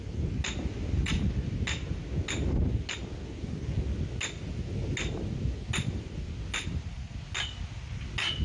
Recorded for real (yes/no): yes